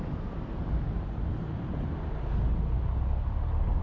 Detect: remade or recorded recorded